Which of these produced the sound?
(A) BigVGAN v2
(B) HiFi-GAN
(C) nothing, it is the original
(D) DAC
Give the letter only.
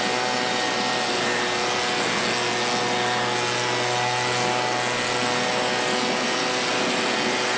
C